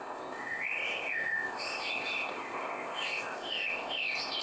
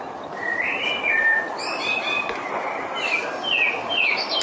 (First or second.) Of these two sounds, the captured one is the second